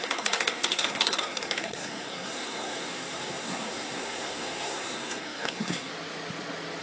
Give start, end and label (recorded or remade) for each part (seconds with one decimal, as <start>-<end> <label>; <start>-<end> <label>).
0.0-5.9 remade; 5.9-6.8 recorded